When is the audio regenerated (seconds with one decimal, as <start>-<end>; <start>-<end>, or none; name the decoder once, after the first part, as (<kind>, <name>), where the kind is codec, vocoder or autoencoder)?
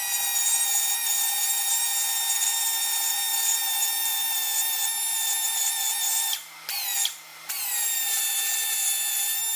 7.3-8.2 (vocoder, BigVGAN v2)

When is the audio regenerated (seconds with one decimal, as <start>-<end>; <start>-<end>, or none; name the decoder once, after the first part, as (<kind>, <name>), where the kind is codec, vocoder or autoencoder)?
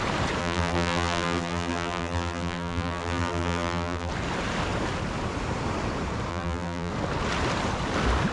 0.4-4.1 (vocoder, BigVGAN v2); 6.3-6.9